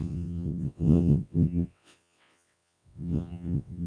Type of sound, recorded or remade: remade